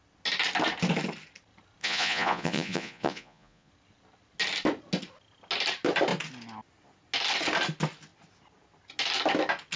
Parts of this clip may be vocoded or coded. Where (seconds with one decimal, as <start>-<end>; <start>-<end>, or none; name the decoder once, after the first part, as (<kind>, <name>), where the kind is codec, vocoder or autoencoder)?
1.8-3.7 (vocoder, Vocos)